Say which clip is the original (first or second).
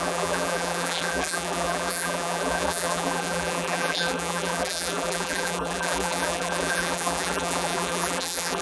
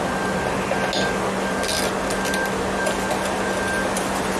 second